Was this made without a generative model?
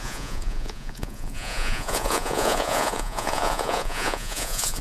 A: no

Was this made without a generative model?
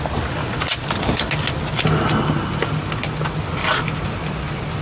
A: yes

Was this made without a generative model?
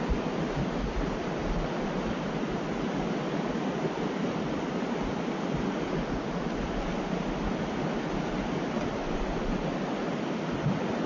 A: yes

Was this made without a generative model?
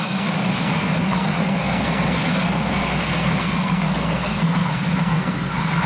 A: no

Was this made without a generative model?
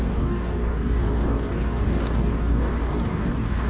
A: no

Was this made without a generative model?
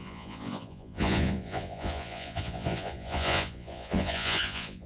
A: no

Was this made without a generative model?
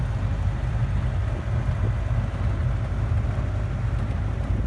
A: yes